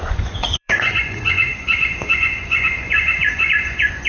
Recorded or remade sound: remade